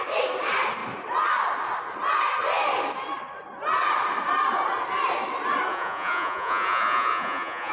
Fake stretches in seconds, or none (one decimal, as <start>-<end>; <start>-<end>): 5.7-7.7